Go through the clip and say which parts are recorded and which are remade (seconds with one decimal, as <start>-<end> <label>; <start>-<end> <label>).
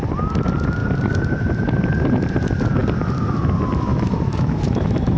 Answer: 0.0-3.9 recorded; 3.9-5.2 remade